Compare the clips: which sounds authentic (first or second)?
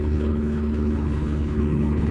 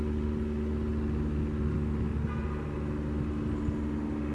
second